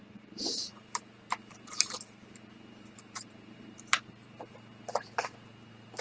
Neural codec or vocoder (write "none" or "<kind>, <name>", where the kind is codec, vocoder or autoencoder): vocoder, BigVGAN v2